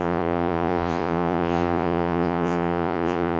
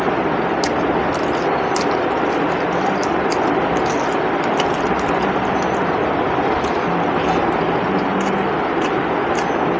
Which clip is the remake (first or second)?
first